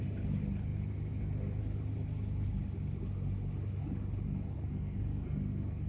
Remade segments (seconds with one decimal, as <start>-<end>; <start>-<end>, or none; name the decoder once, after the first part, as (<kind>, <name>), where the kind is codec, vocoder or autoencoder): 4.6-5.9 (codec, SNAC)

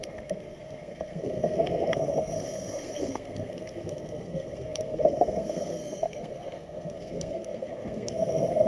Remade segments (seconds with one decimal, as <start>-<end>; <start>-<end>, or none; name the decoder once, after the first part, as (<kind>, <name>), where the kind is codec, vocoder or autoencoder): 0.0-8.7 (codec, SNAC)

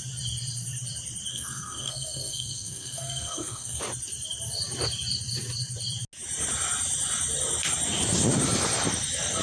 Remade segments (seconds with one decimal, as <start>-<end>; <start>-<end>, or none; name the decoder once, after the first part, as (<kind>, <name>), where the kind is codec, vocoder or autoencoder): 1.3-3.8 (codec, SNAC)